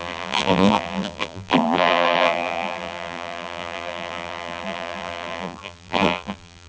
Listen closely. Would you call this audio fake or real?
fake